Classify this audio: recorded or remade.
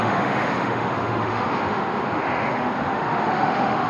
remade